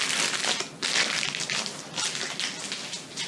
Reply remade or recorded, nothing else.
recorded